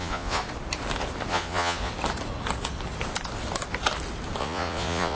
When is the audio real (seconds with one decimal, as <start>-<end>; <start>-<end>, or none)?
0.4-1.3; 1.9-4.4